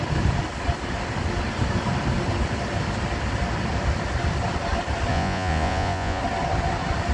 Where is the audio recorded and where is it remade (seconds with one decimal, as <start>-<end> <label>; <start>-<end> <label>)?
0.0-5.1 recorded; 5.1-6.2 remade; 6.2-7.1 recorded